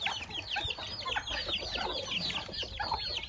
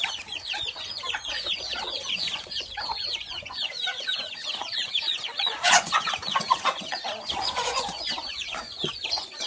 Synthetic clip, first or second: second